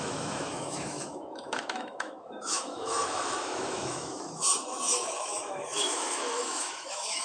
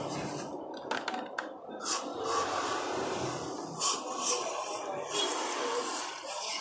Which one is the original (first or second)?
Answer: second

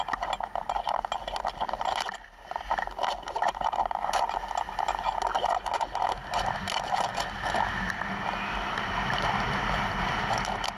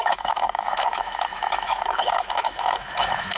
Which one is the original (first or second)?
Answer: first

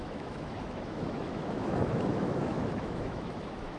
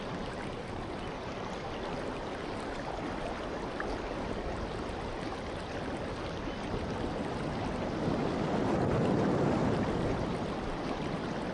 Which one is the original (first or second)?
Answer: second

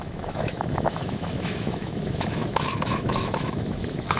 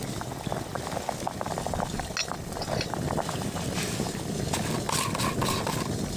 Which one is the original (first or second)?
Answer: second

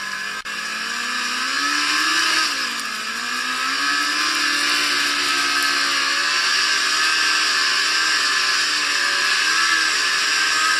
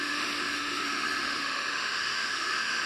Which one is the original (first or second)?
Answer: first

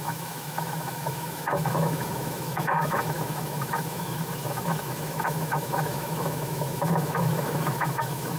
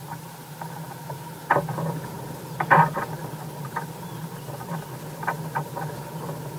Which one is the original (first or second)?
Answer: second